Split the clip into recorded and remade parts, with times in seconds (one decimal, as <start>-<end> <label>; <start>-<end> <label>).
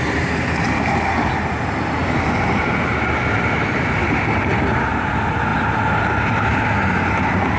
0.0-7.6 recorded